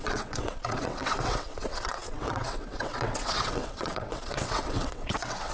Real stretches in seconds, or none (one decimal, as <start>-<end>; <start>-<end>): none